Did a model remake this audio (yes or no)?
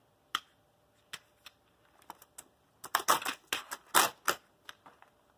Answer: no